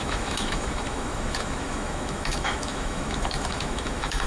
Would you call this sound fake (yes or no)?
yes